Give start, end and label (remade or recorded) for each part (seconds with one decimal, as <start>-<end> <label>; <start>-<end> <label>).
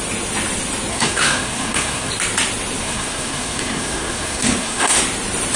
0.0-0.9 recorded; 0.9-2.1 remade; 2.1-2.8 recorded; 2.8-5.0 remade; 5.0-5.6 recorded